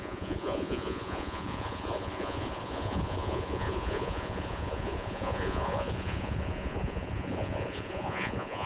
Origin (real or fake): fake